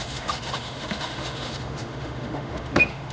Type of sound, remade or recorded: remade